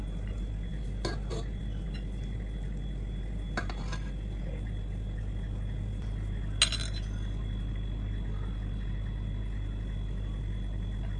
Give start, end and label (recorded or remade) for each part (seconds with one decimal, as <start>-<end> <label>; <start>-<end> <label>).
0.0-11.2 recorded